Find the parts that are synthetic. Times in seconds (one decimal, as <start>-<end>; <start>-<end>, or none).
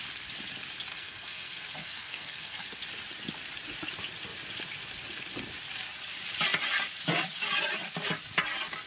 0.9-2.8